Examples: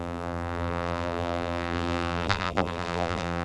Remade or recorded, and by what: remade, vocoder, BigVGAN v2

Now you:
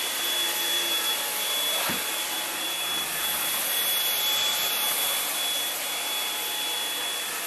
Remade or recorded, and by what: recorded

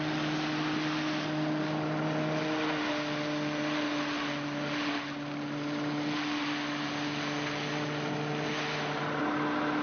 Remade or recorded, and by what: recorded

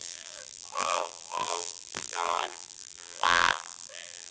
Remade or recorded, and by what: remade, vocoder, BigVGAN v2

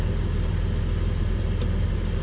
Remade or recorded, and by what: recorded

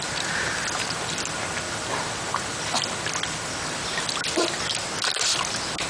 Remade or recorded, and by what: recorded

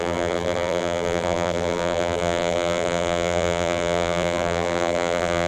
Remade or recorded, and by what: remade, vocoder, BigVGAN v2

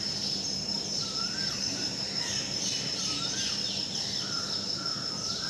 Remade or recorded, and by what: remade, vocoder, BigVGAN v2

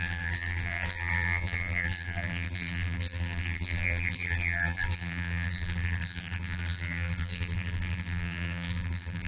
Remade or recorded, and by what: remade, vocoder, BigVGAN v2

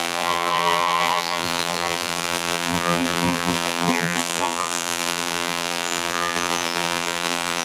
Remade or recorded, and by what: remade, vocoder, BigVGAN v2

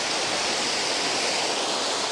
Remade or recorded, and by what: recorded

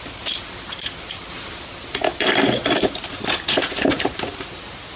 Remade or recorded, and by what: recorded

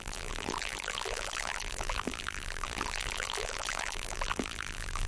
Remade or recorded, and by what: remade, vocoder, BigVGAN v2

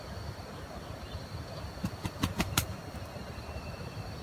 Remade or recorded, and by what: recorded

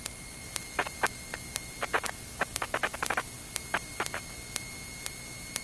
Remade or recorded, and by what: recorded